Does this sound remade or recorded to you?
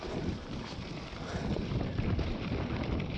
recorded